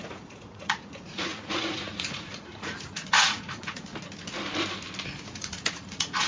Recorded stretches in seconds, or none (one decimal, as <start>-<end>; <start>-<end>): 3.9-5.2